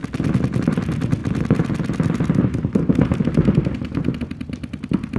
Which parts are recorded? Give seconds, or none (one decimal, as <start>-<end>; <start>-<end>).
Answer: 0.0-0.6; 1.2-4.2